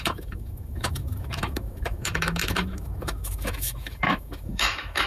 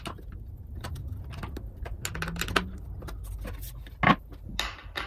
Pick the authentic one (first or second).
second